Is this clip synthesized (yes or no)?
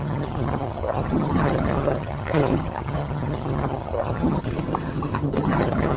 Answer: yes